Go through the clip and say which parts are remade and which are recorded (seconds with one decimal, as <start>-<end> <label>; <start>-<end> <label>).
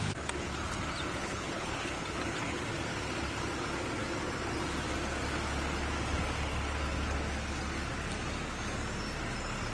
0.0-1.2 recorded; 1.2-2.6 remade; 2.6-9.7 recorded